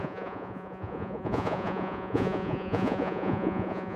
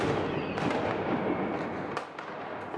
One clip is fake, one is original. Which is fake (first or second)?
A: first